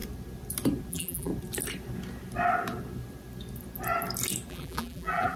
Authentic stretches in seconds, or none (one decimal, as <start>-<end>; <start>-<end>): 0.0-0.9; 1.3-4.5